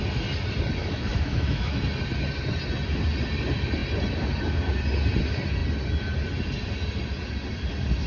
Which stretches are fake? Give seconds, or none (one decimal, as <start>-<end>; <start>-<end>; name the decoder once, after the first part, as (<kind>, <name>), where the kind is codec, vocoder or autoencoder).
0.8-1.8 (autoencoder, DAC-VAE)